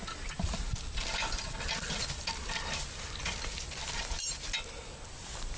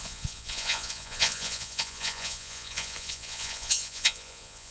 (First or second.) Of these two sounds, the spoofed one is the second